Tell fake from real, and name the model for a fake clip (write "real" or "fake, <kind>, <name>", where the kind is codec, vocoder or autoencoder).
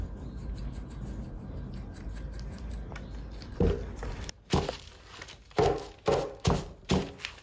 real